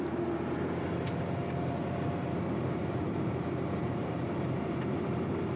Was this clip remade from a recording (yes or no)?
yes